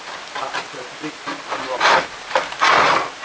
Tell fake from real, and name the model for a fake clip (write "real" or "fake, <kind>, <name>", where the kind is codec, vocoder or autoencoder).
real